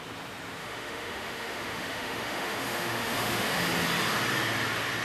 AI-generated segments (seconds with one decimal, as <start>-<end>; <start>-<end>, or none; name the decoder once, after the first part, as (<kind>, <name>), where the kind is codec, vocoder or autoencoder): 0.6-3.6 (autoencoder, DAC-VAE)